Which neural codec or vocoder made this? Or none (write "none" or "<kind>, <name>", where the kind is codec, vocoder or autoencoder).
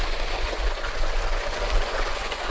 vocoder, Vocos